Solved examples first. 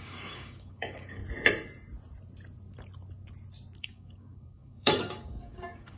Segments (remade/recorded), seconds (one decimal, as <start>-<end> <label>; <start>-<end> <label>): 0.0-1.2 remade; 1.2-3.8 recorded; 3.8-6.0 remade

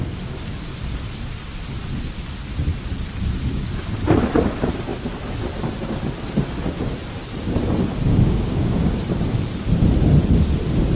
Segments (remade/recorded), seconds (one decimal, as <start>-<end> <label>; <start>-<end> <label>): 0.0-8.1 recorded; 8.1-8.9 remade; 8.9-11.0 recorded

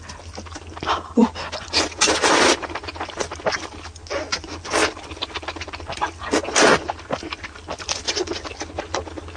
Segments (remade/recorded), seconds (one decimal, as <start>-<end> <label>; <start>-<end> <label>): 0.0-9.4 recorded